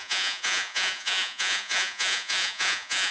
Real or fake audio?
fake